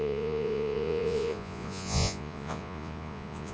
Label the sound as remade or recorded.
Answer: remade